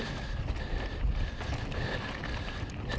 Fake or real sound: real